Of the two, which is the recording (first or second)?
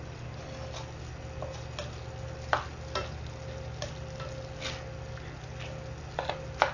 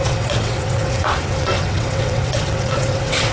first